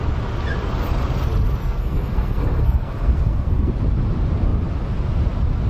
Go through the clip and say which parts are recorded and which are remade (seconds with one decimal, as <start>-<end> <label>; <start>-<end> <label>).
0.0-1.6 recorded; 1.6-3.7 remade; 3.7-5.7 recorded